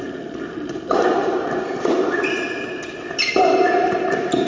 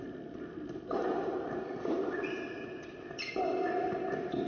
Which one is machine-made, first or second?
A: first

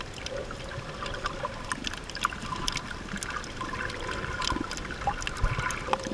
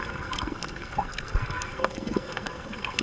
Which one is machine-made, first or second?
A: second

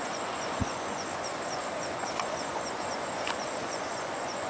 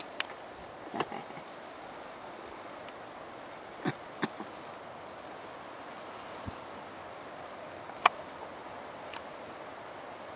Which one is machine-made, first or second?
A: first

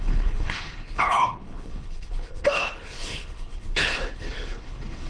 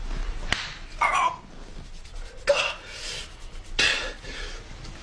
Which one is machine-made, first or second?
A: first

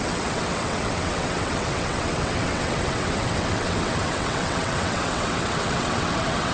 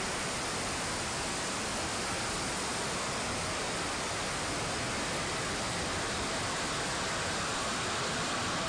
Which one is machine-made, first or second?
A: first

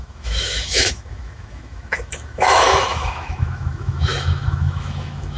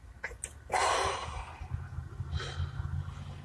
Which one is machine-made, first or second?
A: first